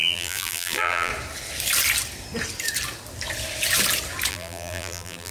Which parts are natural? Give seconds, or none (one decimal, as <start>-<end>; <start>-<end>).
1.1-4.3

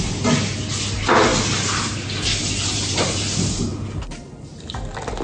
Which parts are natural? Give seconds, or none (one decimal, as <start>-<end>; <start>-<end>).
0.0-5.2

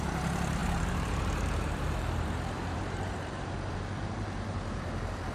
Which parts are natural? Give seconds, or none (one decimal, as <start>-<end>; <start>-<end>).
none

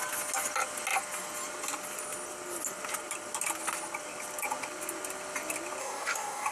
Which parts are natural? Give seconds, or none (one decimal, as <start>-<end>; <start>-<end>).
0.0-5.8

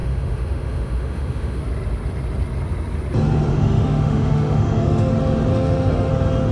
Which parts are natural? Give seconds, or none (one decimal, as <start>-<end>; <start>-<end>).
1.6-3.5; 5.1-5.5; 6.1-6.5

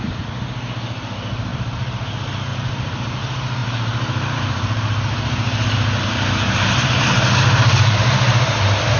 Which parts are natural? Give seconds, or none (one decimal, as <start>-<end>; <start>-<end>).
0.0-1.5; 2.1-2.5; 3.2-3.6; 8.6-9.0

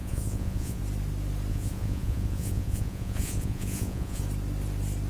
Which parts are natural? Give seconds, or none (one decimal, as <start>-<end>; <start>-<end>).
0.8-1.5; 4.2-5.1